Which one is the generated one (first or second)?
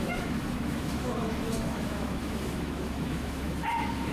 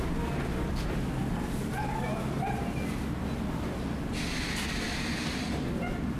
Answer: first